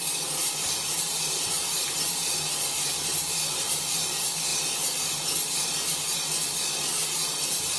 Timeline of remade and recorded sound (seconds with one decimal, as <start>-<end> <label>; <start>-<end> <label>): 0.0-0.4 recorded; 0.4-4.1 remade; 4.1-7.0 recorded; 7.0-7.8 remade